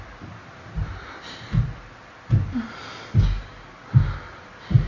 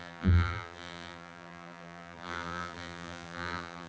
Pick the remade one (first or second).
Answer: second